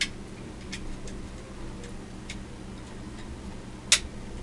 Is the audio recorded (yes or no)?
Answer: yes